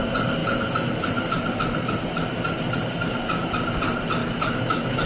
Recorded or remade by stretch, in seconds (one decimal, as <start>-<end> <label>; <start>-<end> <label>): 0.0-4.2 recorded; 4.2-5.1 remade